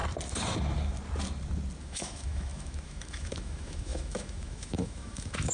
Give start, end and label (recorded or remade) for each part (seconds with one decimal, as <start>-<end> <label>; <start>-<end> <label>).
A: 0.0-1.8 recorded; 1.8-5.5 remade